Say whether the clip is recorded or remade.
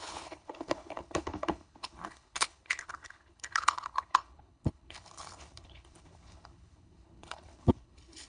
remade